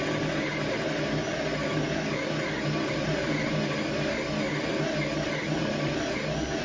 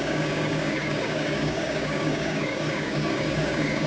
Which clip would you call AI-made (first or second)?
second